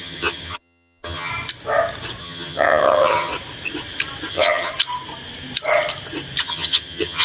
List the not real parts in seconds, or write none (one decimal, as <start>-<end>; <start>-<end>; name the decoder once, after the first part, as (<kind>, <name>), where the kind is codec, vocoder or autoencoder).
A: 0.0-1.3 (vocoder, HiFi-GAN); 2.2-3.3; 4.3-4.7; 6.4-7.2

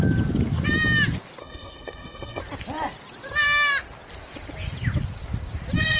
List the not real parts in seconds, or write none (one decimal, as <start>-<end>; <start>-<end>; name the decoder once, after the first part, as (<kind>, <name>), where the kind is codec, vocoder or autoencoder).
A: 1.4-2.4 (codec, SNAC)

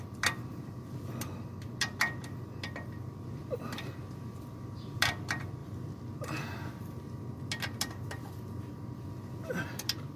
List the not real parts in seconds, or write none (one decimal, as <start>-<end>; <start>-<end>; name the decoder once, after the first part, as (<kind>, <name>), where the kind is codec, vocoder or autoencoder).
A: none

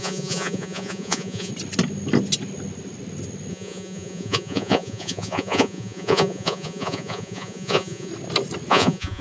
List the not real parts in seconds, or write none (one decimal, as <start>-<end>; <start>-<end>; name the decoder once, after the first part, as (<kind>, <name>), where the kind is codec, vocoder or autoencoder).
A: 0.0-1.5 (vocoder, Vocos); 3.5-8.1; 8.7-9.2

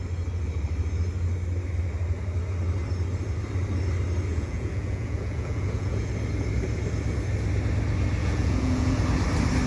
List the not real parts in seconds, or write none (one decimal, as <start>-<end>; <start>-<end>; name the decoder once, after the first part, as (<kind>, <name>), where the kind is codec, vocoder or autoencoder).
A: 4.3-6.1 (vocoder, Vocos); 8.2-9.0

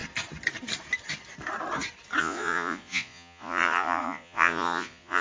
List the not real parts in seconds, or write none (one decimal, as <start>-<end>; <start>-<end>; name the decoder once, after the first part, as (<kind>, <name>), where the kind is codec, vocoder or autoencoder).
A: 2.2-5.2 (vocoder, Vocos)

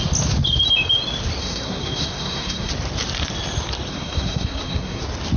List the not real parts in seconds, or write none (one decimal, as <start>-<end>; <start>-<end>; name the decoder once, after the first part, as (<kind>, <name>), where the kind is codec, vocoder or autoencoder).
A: 1.4-2.7 (codec, SNAC); 3.9-5.0

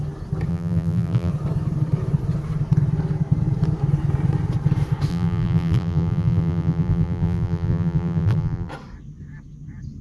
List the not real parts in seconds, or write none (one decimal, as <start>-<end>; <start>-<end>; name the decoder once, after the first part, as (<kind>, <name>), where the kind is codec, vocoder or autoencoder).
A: 0.5-1.3 (vocoder, BigVGAN v2); 5.1-8.7